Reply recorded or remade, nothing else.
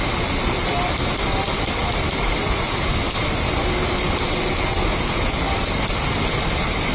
recorded